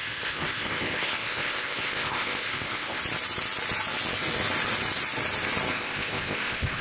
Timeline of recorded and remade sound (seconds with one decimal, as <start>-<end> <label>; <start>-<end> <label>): 0.0-3.0 remade; 3.0-5.7 recorded; 5.7-6.8 remade